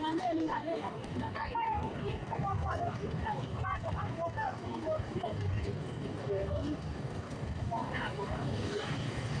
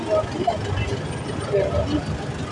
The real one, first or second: second